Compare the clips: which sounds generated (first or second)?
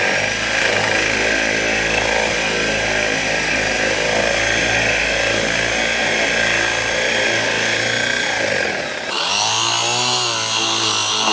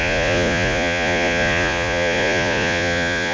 second